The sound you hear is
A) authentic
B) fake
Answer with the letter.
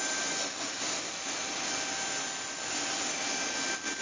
A